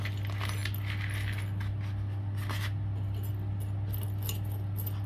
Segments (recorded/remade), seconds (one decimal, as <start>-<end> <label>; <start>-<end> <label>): 0.0-5.1 recorded